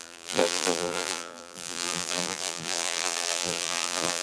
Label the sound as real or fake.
fake